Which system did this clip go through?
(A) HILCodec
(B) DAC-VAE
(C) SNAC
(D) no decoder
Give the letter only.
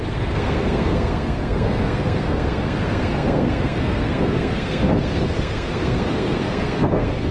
C